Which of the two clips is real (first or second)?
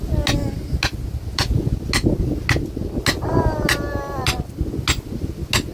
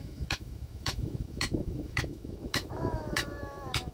first